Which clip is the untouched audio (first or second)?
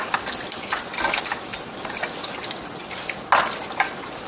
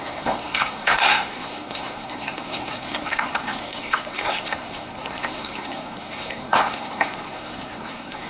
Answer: first